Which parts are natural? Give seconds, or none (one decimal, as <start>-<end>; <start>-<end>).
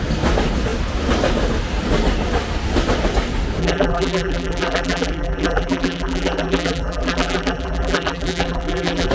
0.0-3.6